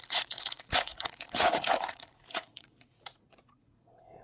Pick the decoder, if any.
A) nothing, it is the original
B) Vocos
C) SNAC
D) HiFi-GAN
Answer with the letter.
B